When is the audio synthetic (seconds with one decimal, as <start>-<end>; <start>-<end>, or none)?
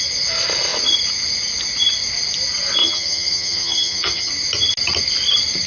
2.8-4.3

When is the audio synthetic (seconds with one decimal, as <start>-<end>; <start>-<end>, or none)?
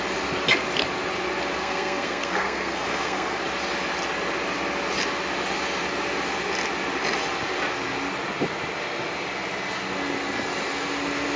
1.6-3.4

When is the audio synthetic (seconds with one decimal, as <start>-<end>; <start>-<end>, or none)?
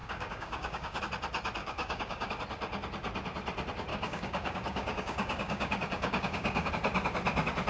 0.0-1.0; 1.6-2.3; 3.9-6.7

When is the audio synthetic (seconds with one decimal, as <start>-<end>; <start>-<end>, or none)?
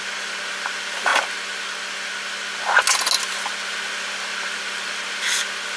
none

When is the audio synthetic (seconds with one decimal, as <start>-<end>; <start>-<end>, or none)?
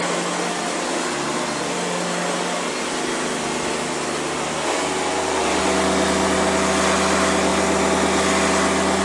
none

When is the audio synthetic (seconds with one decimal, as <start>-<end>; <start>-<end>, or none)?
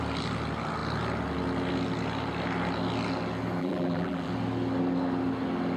3.6-4.3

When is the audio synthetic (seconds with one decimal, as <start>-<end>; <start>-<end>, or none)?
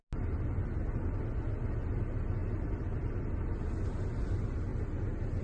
2.4-3.2